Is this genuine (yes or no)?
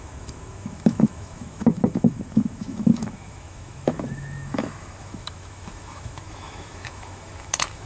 no